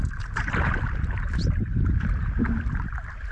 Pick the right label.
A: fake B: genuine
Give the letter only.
B